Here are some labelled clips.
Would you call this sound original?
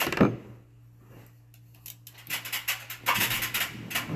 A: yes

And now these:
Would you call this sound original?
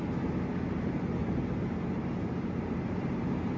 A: yes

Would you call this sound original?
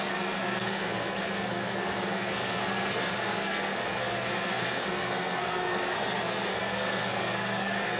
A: no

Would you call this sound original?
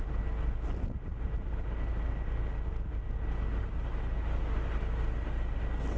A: yes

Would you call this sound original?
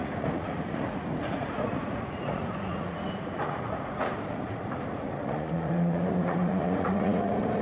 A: no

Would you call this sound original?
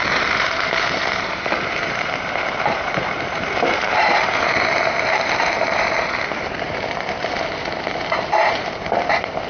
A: no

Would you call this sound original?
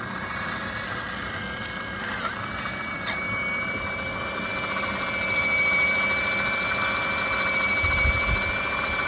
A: yes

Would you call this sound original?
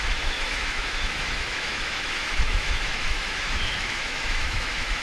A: no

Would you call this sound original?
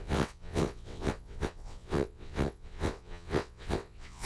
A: no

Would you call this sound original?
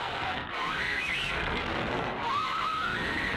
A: no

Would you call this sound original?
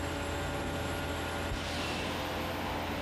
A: yes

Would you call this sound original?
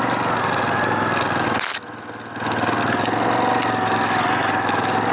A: yes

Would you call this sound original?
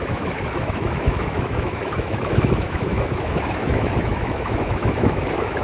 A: no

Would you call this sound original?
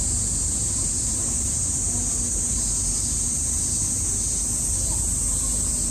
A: no